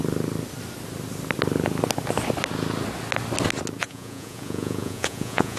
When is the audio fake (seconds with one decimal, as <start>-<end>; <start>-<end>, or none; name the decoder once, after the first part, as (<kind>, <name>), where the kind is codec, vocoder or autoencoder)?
3.8-5.6 (vocoder, Vocos)